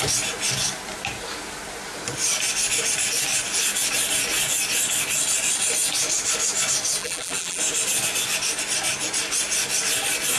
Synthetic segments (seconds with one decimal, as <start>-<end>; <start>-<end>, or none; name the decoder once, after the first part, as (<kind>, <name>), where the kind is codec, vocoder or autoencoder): 7.0-7.6 (vocoder, BigVGAN v2)